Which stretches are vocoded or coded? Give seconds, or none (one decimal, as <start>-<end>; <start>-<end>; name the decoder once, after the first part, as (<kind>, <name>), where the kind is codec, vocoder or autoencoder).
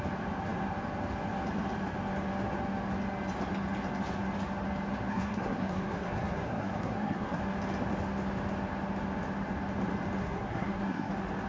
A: 5.1-7.4 (codec, SNAC); 10.2-11.1